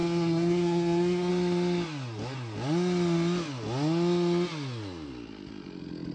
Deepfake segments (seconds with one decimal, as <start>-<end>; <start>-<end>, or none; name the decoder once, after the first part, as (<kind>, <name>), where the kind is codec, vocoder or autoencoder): 0.0-1.3 (codec, SNAC)